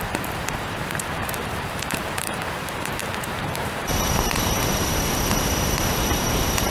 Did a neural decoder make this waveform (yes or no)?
yes